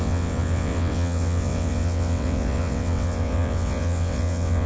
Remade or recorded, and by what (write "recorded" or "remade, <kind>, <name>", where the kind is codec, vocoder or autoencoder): remade, vocoder, WaveNeXt